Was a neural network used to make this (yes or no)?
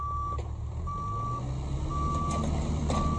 no